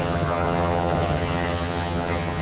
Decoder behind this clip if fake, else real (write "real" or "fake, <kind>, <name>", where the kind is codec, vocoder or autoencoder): fake, vocoder, HiFi-GAN